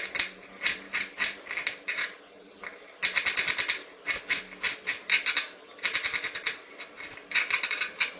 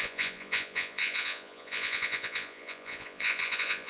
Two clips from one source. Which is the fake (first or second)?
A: second